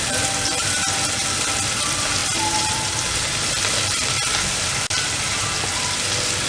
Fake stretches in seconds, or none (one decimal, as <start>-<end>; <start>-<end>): none